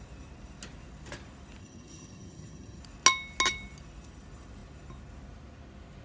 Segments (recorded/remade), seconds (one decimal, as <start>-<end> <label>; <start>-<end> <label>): 0.0-1.6 recorded; 1.6-2.8 remade; 2.8-6.0 recorded